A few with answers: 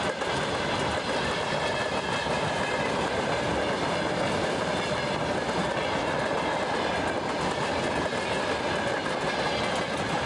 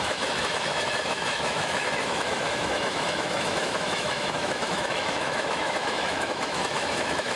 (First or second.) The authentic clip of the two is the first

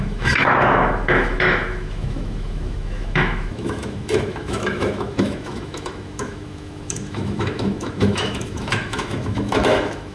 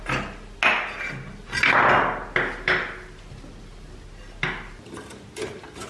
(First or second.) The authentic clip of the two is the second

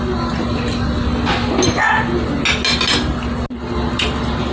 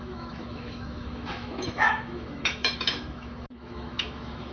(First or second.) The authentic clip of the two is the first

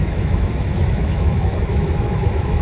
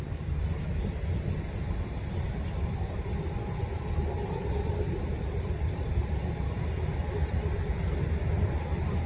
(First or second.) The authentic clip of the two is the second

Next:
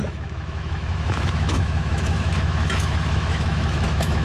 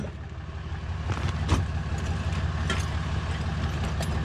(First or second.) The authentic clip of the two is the second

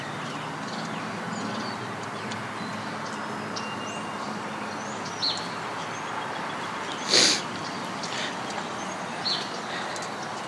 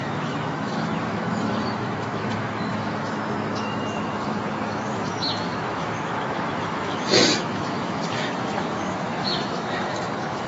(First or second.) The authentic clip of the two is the first